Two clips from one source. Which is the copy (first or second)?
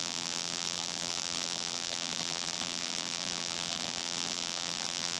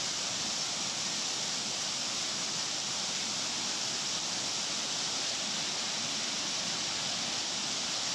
first